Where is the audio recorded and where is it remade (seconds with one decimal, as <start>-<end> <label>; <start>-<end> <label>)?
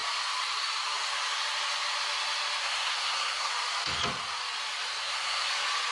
0.0-2.6 recorded; 2.6-3.5 remade; 3.5-5.0 recorded; 5.0-5.5 remade; 5.5-5.9 recorded